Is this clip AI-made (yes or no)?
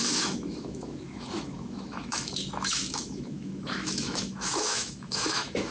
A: yes